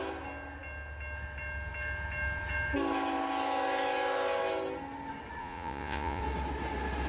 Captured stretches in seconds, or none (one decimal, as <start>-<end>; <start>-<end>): 0.0-5.4; 6.2-7.1